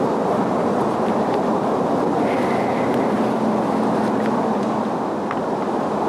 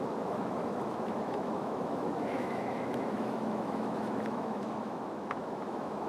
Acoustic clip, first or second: first